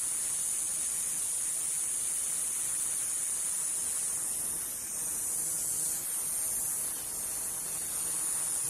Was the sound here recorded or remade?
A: remade